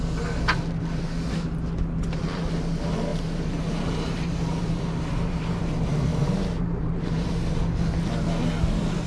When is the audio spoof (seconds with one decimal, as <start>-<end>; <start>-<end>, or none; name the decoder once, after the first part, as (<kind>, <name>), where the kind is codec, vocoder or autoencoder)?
3.1-5.6 (vocoder, BigVGAN v2); 6.1-7.3